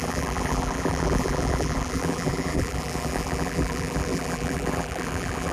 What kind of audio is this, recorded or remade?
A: remade